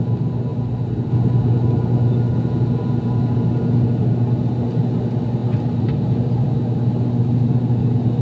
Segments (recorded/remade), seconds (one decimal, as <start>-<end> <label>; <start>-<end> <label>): 0.0-8.2 recorded